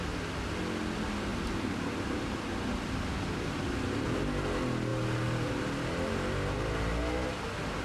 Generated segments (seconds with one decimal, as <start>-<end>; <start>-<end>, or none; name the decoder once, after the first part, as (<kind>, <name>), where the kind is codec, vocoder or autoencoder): 1.3-2.7 (vocoder, BigVGAN v2)